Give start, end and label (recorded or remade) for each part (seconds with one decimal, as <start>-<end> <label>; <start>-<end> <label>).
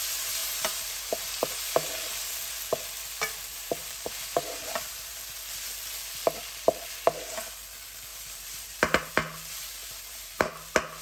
0.0-0.4 recorded; 0.4-1.9 remade; 1.9-3.5 recorded; 3.5-5.1 remade; 5.1-8.1 recorded; 8.1-9.1 remade; 9.1-9.8 recorded; 9.8-10.5 remade; 10.5-11.0 recorded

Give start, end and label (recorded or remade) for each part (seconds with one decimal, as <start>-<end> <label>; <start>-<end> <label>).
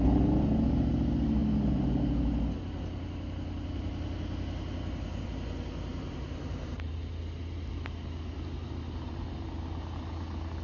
0.0-5.9 recorded; 5.9-6.9 remade; 6.9-10.6 recorded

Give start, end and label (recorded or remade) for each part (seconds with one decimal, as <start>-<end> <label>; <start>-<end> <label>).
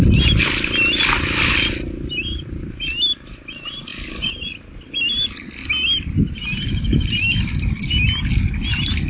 0.0-9.1 recorded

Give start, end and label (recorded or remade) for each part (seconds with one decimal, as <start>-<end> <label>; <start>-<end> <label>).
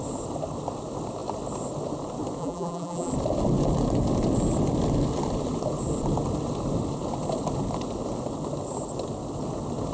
0.0-2.4 recorded; 2.4-3.1 remade; 3.1-9.9 recorded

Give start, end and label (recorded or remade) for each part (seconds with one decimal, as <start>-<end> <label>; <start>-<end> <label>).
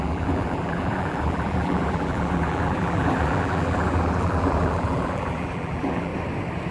0.0-6.1 remade; 6.1-6.7 recorded